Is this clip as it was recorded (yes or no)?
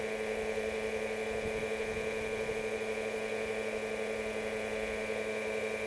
yes